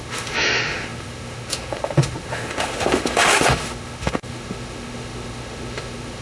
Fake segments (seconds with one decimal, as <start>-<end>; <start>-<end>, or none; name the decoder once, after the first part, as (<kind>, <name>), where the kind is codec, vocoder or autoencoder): 0.0-6.2 (autoencoder, DAC-VAE)